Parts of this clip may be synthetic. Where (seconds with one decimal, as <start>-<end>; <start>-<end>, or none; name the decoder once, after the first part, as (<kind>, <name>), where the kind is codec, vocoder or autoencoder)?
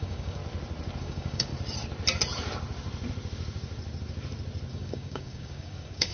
0.0-0.4 (codec, DAC); 1.0-1.5; 4.7-6.1